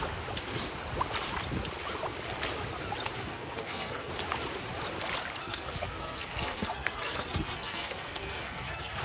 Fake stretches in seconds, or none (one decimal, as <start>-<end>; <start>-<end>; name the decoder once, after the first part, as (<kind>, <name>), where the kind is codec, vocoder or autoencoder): 3.3-4.1 (codec, SNAC); 5.4-9.0